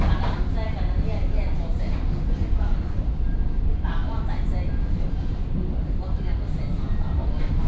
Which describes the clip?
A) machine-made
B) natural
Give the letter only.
B